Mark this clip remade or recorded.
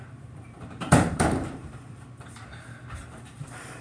remade